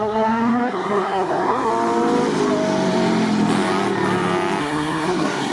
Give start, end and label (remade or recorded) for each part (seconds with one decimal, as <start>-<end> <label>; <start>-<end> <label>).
0.0-1.7 remade; 1.7-4.6 recorded; 4.6-5.5 remade